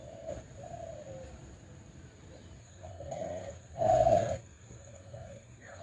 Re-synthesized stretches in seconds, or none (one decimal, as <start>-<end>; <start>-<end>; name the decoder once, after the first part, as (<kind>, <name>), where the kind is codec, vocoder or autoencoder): 2.6-5.8 (codec, SNAC)